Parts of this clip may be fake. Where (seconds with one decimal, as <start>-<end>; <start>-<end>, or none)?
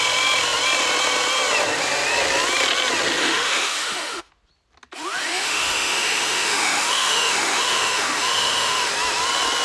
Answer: 3.2-4.3; 5.2-8.9